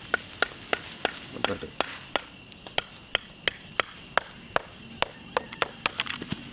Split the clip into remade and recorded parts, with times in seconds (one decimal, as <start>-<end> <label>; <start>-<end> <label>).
0.0-6.5 recorded